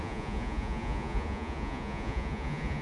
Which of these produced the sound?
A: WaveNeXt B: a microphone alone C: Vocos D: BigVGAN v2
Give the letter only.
C